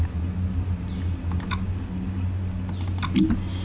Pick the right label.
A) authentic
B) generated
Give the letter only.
A